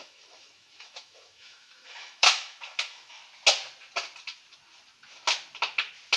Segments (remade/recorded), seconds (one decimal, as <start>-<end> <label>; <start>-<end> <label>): 0.0-3.2 remade; 3.2-6.2 recorded